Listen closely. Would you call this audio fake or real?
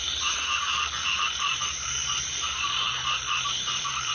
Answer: fake